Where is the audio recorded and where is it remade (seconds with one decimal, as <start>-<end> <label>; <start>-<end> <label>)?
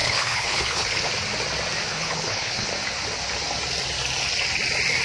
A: 0.0-1.1 remade; 1.1-1.9 recorded; 1.9-2.7 remade; 2.7-5.0 recorded